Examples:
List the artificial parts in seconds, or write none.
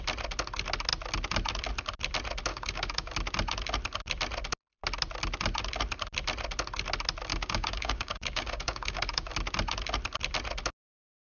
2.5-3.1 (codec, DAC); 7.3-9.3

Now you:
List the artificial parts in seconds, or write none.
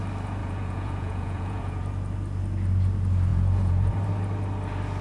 0.4-1.8 (vocoder, Vocos); 3.3-3.9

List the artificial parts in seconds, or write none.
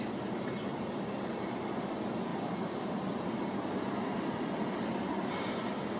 none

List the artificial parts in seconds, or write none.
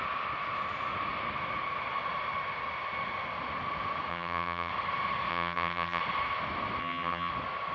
4.1-4.7 (vocoder, HiFi-GAN); 5.3-6.0; 6.8-7.3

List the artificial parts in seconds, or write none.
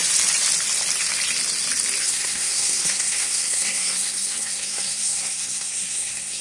2.0-6.4 (codec, SNAC)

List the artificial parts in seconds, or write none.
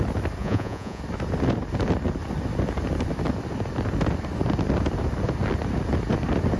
0.4-1.0 (vocoder, Vocos)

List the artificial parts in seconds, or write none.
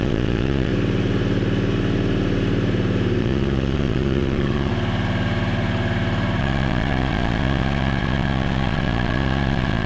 0.0-0.7 (vocoder, Vocos); 3.2-4.7; 6.4-9.9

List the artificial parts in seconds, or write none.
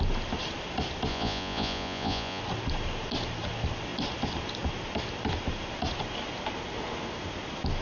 1.1-2.4 (vocoder, Vocos)